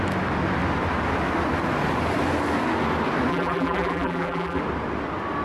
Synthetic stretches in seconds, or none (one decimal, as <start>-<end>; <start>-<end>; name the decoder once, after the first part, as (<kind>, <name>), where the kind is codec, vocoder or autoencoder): 3.3-4.6 (vocoder, BigVGAN v2)